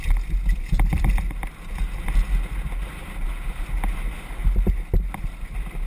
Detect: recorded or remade recorded